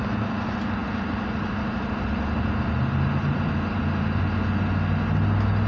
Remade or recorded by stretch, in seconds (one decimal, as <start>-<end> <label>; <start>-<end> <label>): 0.0-0.8 recorded; 0.8-4.2 remade; 4.2-5.7 recorded